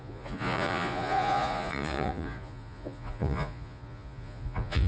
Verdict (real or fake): fake